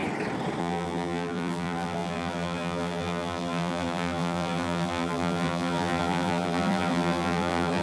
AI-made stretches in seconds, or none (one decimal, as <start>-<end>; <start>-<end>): 0.6-7.8